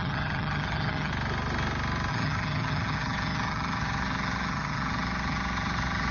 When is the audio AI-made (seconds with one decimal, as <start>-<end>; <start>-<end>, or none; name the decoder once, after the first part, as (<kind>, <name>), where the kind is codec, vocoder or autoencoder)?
0.0-1.1 (vocoder, HiFi-GAN); 2.1-6.1